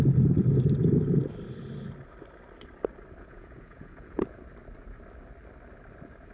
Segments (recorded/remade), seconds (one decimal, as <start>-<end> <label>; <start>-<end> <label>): 0.0-3.2 recorded; 3.2-4.4 remade; 4.4-6.3 recorded